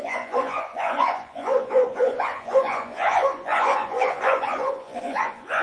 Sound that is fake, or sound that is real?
fake